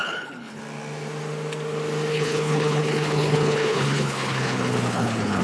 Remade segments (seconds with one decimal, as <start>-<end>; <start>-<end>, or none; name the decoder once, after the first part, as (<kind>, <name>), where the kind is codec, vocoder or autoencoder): 0.0-0.6 (codec, HILCodec); 2.1-5.4